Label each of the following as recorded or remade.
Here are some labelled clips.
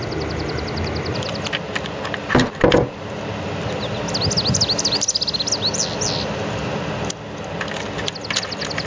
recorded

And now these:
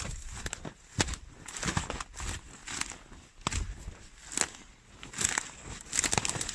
recorded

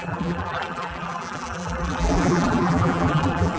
remade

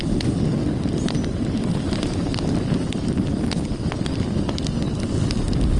recorded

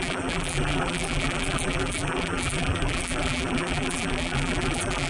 remade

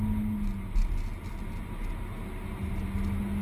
recorded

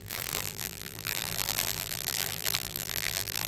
remade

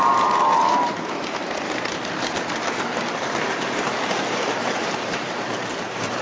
remade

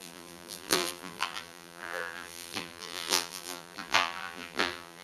remade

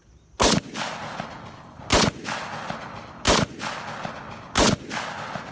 recorded